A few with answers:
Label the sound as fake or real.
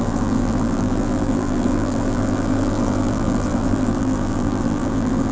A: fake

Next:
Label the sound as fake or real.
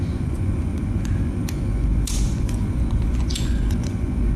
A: fake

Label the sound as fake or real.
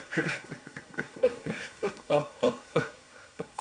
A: fake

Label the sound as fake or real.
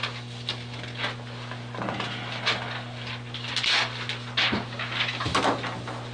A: real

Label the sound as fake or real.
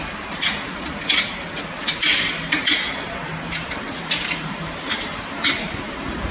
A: fake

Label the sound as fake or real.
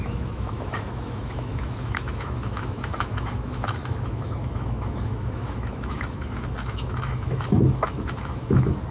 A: fake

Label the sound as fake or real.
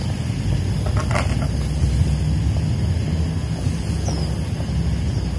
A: real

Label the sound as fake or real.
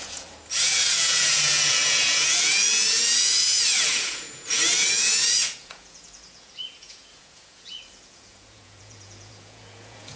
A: fake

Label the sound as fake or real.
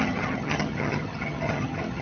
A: fake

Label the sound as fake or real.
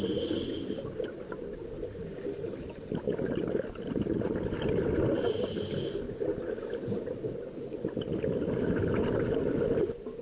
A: real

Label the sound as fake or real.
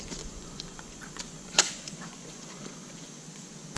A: fake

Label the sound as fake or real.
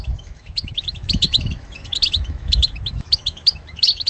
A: fake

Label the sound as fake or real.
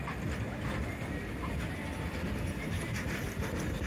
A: real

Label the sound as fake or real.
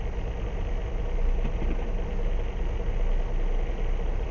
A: real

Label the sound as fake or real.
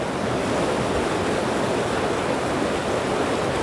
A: real